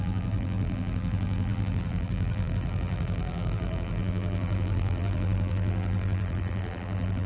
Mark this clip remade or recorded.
remade